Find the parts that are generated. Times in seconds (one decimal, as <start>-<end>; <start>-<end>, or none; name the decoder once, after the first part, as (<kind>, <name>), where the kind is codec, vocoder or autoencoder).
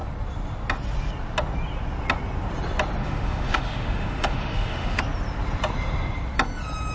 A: 3.0-5.0 (autoencoder, DAC-VAE)